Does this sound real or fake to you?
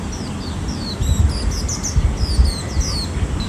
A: real